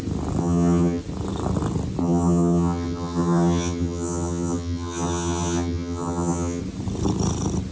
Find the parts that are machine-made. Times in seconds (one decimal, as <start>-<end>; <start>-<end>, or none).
0.4-1.0; 2.0-6.6